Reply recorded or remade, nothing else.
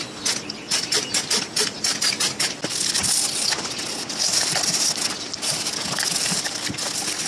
recorded